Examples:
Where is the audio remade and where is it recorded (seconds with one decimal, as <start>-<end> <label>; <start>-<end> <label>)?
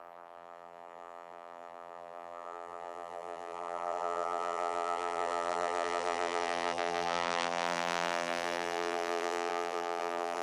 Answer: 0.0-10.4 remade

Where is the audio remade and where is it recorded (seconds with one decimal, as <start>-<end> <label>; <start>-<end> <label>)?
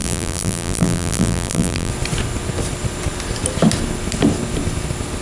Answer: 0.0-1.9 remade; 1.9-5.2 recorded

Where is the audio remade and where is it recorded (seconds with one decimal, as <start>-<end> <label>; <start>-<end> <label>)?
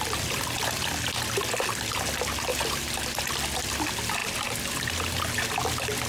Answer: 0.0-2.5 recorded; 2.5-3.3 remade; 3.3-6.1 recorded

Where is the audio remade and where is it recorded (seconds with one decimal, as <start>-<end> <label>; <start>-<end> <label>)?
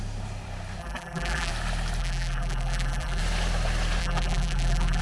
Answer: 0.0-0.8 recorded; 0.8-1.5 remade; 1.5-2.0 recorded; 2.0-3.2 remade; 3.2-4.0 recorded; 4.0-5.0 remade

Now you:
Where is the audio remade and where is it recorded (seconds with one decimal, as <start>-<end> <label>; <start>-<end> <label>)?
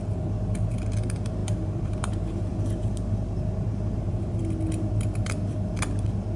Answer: 0.0-1.4 recorded; 1.4-4.4 remade; 4.4-6.4 recorded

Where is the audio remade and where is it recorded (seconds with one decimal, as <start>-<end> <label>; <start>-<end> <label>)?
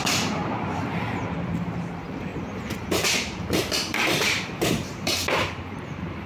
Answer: 0.0-0.4 remade; 0.4-1.4 recorded; 1.4-2.3 remade; 2.3-3.6 recorded; 3.6-5.2 remade; 5.2-5.8 recorded; 5.8-6.3 remade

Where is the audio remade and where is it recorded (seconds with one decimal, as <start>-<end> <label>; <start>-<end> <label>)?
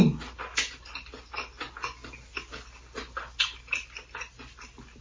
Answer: 0.0-5.0 recorded